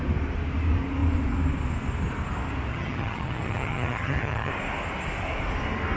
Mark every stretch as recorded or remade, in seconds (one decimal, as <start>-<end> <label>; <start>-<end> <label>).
0.0-2.7 recorded; 2.7-4.5 remade; 4.5-6.0 recorded